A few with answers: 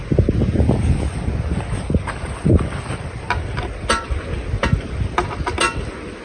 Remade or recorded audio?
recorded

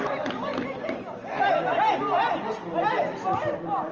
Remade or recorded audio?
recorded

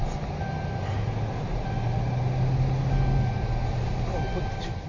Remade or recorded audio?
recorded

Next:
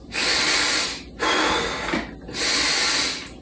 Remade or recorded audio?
recorded